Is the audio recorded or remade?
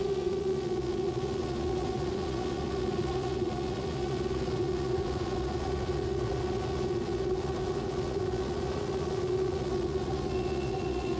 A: remade